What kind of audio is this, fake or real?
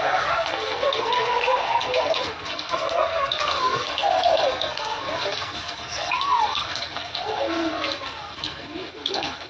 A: fake